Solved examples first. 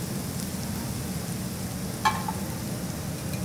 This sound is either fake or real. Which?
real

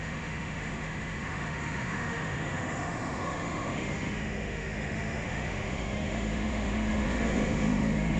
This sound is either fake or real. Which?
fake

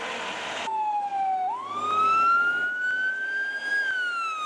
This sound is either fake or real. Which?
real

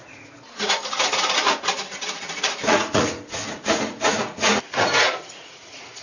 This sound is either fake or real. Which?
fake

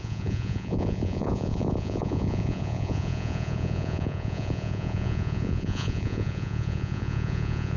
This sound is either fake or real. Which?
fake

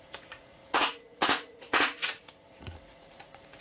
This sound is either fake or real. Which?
fake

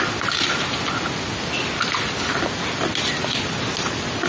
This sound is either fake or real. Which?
real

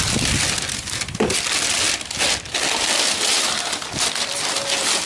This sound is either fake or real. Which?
real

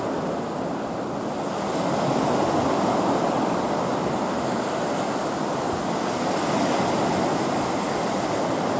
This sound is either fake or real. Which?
real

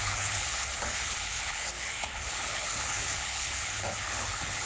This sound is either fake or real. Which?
fake